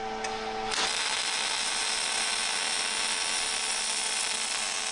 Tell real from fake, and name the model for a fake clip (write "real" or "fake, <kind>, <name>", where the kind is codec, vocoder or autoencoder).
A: real